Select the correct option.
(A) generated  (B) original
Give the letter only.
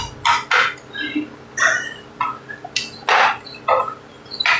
B